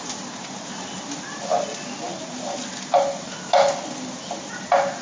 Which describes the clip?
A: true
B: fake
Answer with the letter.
A